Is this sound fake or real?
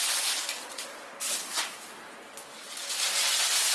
real